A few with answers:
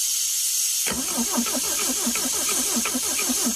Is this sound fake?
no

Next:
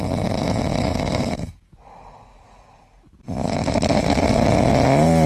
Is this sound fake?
no